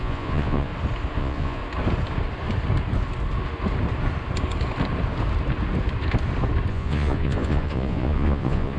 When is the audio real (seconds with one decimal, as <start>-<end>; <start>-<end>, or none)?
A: 0.7-1.2; 1.6-6.7